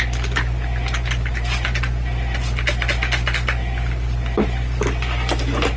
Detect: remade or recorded recorded